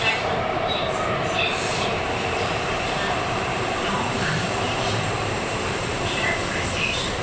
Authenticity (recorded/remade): remade